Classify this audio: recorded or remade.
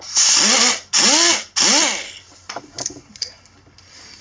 recorded